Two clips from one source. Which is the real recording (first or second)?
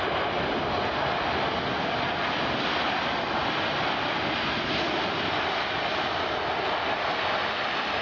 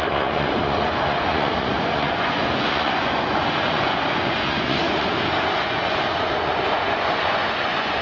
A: first